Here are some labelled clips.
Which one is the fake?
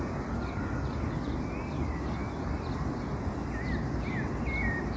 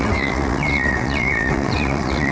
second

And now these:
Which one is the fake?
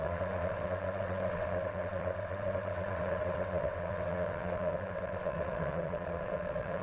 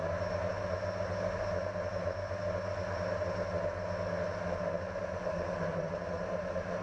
first